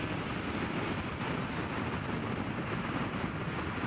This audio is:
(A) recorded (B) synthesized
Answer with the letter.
A